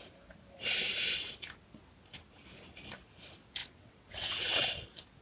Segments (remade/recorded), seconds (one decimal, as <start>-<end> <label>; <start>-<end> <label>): 0.0-3.6 recorded; 3.6-4.7 remade; 4.7-5.2 recorded